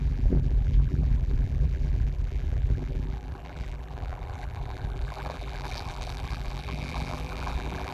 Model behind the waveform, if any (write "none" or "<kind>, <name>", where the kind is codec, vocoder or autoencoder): vocoder, BigVGAN v2